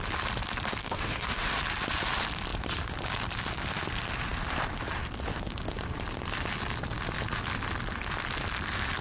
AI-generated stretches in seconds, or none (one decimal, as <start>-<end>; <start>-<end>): 0.8-1.6